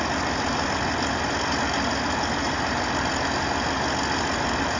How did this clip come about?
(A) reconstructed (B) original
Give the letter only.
B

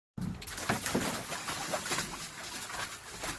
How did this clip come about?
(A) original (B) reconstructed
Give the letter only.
A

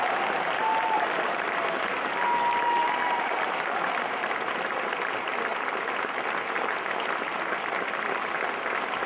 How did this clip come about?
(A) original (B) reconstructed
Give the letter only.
A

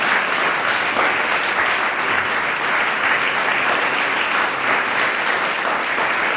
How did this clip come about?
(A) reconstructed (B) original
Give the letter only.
B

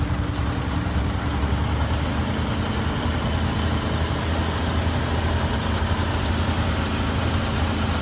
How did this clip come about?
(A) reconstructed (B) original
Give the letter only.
B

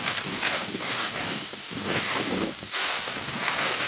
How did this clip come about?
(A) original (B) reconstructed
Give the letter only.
B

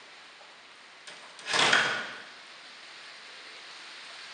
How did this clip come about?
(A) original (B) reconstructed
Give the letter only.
A